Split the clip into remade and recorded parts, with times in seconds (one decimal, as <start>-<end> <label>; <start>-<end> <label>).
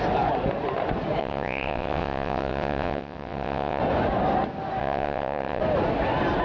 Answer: 0.0-1.2 recorded; 1.2-3.8 remade; 3.8-4.8 recorded; 4.8-5.6 remade; 5.6-6.4 recorded